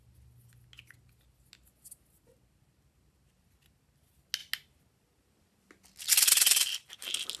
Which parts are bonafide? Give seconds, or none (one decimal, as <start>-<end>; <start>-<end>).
0.0-7.4